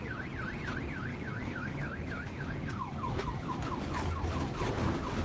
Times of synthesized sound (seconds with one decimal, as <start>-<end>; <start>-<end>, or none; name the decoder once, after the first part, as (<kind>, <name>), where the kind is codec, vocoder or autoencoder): 1.1-4.2 (codec, DAC)

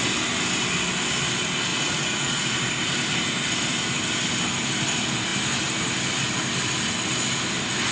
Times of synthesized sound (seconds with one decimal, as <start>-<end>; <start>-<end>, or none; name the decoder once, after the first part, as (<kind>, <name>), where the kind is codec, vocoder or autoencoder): 1.7-2.4 (vocoder, Vocos)

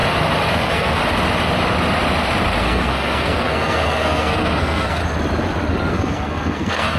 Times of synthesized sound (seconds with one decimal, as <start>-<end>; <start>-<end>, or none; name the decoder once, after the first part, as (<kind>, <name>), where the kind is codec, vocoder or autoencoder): 0.5-1.0 (codec, SNAC); 2.6-5.0; 5.9-7.0

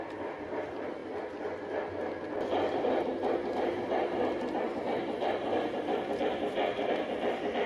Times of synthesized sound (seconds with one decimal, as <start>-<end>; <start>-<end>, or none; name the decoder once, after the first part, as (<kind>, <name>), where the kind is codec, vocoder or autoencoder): 0.0-1.0 (vocoder, BigVGAN v2); 4.2-7.7